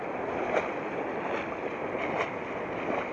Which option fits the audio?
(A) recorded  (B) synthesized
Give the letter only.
A